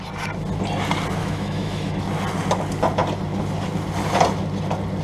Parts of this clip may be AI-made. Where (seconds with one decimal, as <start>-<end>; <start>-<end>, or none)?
1.2-2.0

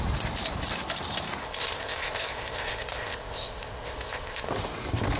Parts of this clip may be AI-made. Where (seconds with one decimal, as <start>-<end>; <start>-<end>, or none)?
1.4-4.5

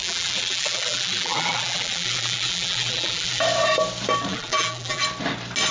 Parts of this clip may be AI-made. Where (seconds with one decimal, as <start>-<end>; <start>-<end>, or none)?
0.0-3.4; 4.3-5.0